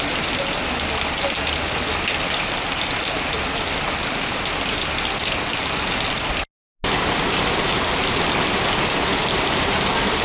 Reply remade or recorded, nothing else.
recorded